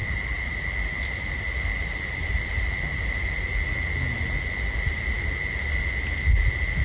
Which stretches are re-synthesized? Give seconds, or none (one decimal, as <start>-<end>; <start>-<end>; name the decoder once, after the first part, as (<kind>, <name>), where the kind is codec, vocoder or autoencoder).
none